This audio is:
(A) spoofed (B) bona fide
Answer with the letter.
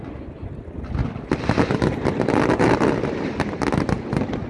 B